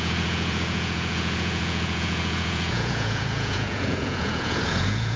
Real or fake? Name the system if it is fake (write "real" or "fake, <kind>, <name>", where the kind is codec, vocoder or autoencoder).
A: fake, vocoder, Vocos